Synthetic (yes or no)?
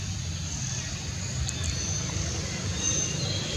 no